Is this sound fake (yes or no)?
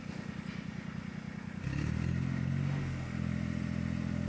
no